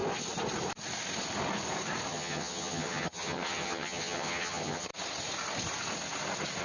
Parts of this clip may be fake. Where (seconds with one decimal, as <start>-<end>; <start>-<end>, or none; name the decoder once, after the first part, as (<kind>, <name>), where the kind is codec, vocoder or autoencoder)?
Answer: 2.1-4.9 (vocoder, HiFi-GAN)